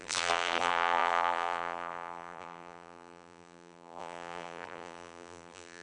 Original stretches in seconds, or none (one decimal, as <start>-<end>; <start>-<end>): none